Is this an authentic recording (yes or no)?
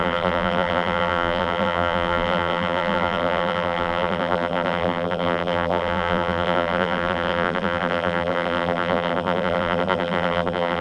no